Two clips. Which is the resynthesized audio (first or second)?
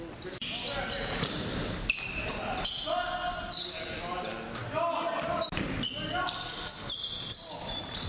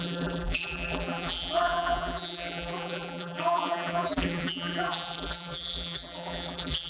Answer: second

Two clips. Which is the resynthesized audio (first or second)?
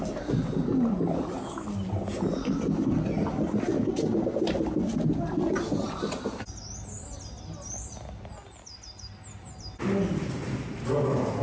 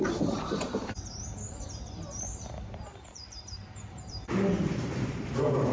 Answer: second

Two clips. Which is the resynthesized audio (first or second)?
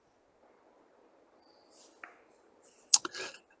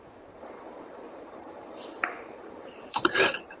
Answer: second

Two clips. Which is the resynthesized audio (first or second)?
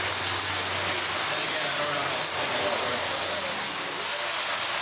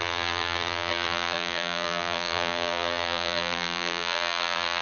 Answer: second